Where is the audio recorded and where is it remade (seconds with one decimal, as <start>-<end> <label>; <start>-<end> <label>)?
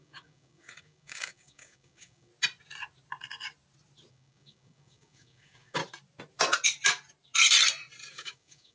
0.0-2.3 remade; 2.3-4.1 recorded; 4.1-5.8 remade; 5.8-8.1 recorded; 8.1-8.7 remade